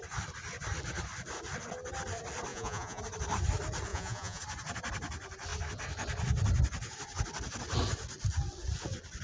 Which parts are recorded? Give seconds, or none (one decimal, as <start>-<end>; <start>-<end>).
0.0-2.5; 3.0-3.9; 4.4-9.2